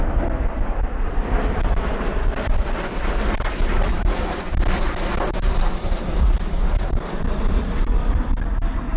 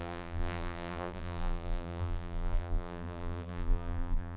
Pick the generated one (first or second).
second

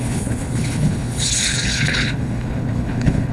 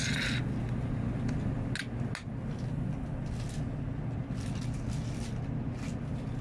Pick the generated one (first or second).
first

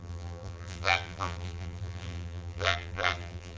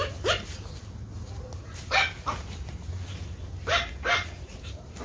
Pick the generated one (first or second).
first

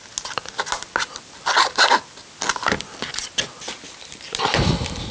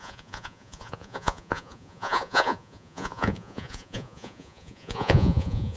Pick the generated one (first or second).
second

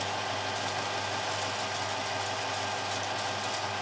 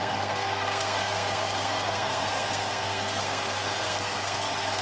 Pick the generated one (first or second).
second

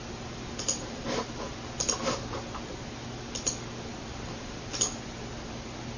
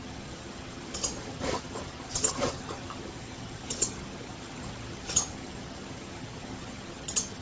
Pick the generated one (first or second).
second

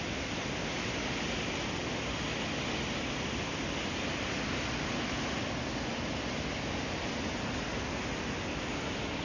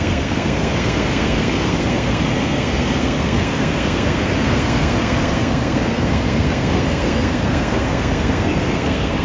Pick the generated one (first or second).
second